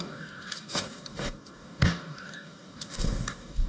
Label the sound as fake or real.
fake